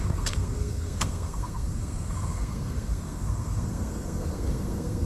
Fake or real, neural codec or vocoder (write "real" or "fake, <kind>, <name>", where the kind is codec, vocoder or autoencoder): fake, codec, SNAC